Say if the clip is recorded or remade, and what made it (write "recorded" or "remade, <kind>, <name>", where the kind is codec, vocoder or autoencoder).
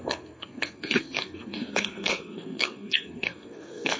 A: remade, codec, SNAC